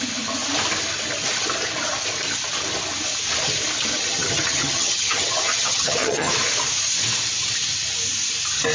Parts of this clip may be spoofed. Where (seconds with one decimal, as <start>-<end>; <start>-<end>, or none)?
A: 3.9-6.3